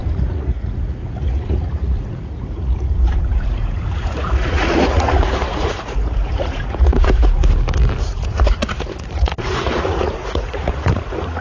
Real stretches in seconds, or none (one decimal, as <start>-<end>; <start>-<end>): 7.4-8.0